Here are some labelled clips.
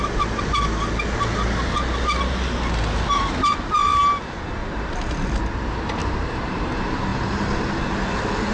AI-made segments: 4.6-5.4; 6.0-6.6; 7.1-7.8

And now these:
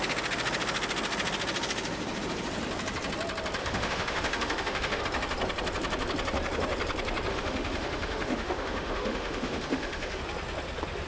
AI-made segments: 3.6-5.0; 7.3-10.2

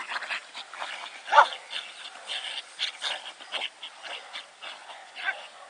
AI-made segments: 4.8-5.7

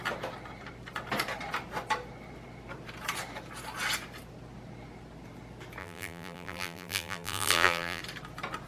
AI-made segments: 5.8-8.0

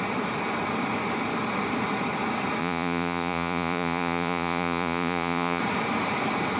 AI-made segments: 2.6-5.6